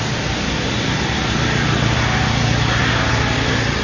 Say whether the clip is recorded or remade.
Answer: recorded